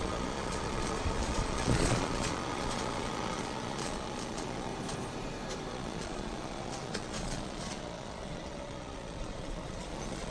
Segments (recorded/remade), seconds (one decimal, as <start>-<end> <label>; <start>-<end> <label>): 0.0-4.7 remade; 4.7-5.7 recorded; 5.7-10.3 remade